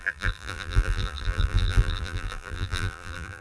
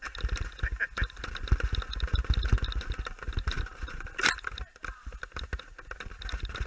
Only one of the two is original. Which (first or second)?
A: second